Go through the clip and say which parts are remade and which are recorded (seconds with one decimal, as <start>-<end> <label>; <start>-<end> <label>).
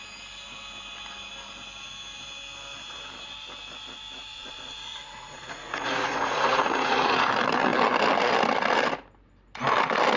0.0-4.3 recorded; 4.3-7.3 remade; 7.3-10.2 recorded